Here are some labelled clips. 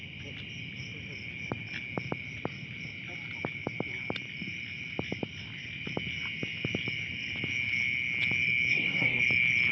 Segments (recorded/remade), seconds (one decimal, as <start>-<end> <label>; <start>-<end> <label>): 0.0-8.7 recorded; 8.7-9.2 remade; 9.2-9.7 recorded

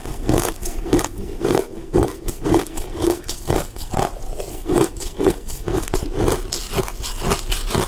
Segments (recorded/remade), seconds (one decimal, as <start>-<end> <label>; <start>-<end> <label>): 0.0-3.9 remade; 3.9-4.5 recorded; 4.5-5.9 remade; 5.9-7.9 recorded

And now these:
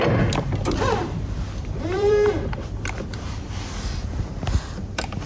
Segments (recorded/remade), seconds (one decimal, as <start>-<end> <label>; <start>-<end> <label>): 0.0-1.0 recorded; 1.0-4.2 remade; 4.2-5.3 recorded

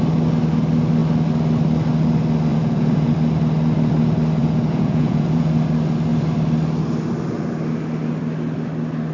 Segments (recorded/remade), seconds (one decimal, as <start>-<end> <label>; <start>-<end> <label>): 0.0-2.5 recorded; 2.5-3.1 remade; 3.1-4.4 recorded; 4.4-5.5 remade; 5.5-9.1 recorded

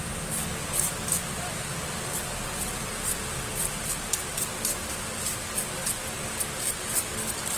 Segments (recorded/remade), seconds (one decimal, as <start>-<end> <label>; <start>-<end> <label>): 0.0-2.2 recorded; 2.2-4.9 remade; 4.9-7.6 recorded